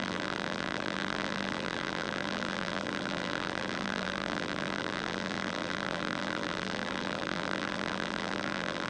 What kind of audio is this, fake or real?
fake